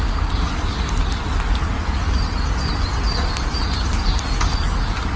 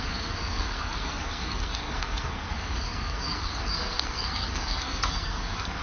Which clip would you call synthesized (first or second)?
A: second